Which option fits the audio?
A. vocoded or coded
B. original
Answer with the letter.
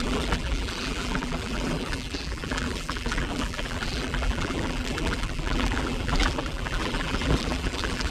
A